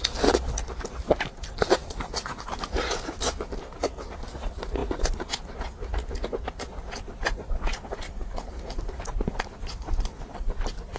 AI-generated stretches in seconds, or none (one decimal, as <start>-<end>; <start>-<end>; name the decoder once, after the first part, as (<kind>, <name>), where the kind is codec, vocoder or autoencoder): 1.8-3.2 (vocoder, BigVGAN v2)